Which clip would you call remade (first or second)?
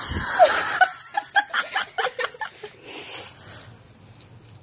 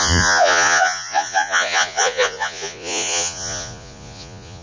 second